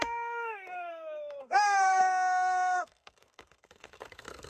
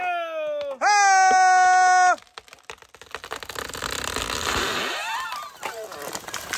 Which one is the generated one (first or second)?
first